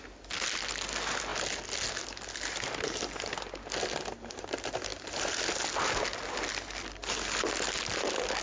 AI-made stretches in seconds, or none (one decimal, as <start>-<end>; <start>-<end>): none

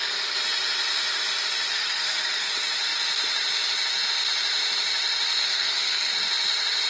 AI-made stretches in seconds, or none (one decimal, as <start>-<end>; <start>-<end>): 1.7-2.5; 5.4-6.1

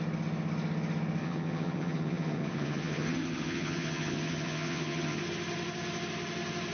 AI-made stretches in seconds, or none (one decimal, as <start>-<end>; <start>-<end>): 1.2-5.2

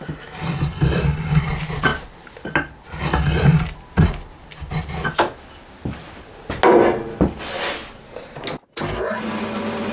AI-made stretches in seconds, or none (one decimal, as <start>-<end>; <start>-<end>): none

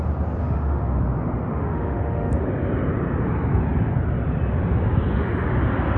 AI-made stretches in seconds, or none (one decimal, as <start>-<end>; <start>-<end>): 0.4-1.0; 1.5-2.3